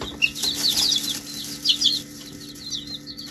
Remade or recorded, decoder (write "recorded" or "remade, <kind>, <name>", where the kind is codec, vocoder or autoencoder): recorded